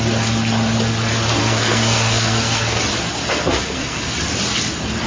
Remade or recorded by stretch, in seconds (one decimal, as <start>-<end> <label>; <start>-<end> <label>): 0.0-1.4 recorded; 1.4-2.8 remade; 2.8-3.2 recorded; 3.2-4.1 remade; 4.1-5.1 recorded